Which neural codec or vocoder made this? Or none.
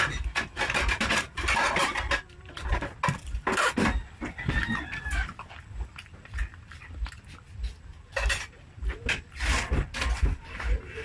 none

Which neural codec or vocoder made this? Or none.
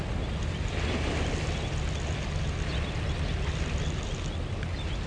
none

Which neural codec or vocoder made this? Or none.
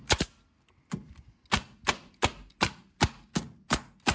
none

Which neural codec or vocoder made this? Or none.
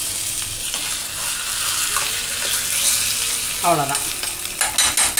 none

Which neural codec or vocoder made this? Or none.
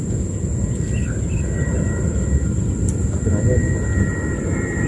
none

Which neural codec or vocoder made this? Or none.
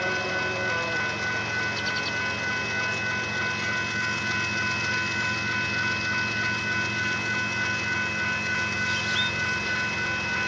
none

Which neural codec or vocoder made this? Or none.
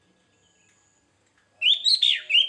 none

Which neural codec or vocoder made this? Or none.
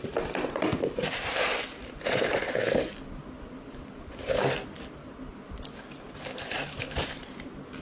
none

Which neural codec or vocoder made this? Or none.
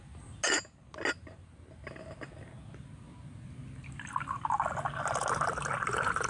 none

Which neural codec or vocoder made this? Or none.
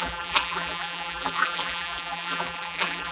vocoder, BigVGAN v2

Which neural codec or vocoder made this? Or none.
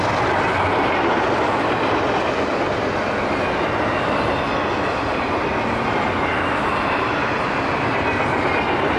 none